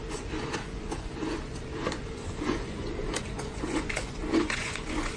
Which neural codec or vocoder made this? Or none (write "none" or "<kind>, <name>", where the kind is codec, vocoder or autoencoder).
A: vocoder, Vocos